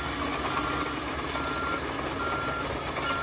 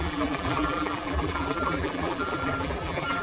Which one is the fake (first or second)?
second